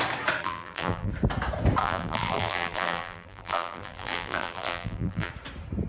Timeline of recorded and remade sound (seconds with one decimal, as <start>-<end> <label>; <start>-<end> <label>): 0.0-0.4 recorded; 0.4-1.1 remade; 1.1-1.8 recorded; 1.8-5.3 remade; 5.3-5.9 recorded